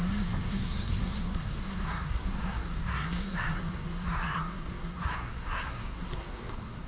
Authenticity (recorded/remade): remade